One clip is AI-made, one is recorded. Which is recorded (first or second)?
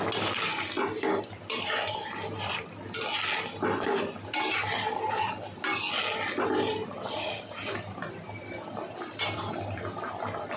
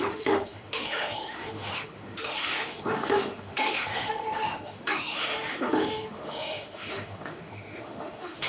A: first